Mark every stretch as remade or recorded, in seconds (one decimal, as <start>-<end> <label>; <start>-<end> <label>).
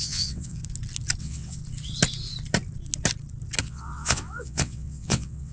0.0-0.6 remade; 0.6-1.2 recorded; 1.2-1.6 remade; 1.6-3.6 recorded; 3.6-5.5 remade